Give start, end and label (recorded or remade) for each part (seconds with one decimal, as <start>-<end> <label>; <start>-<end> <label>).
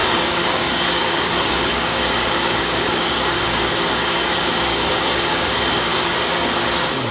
0.0-6.3 remade; 6.3-7.1 recorded